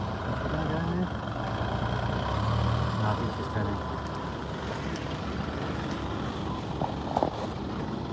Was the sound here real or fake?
real